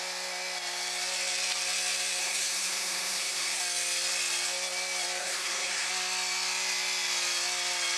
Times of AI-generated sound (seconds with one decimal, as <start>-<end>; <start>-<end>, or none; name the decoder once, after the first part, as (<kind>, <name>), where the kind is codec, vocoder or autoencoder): 2.2-3.6 (codec, SNAC); 5.2-5.9